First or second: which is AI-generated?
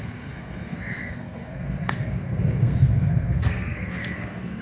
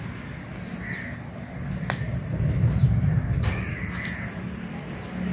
first